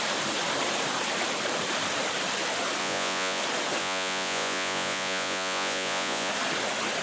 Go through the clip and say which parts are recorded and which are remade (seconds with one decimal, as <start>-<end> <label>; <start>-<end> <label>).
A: 0.0-2.8 recorded; 2.8-3.4 remade; 3.4-3.8 recorded; 3.8-6.3 remade; 6.3-7.0 recorded